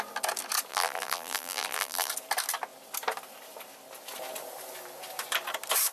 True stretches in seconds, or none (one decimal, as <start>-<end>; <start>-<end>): 0.0-0.7; 2.1-5.9